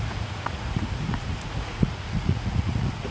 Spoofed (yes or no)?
yes